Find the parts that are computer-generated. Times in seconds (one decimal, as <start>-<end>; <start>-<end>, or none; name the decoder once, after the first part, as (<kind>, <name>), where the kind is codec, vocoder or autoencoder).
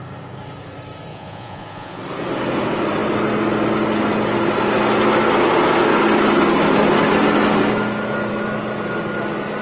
1.1-2.0 (vocoder, Vocos)